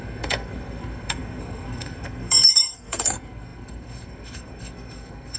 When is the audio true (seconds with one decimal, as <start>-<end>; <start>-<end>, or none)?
none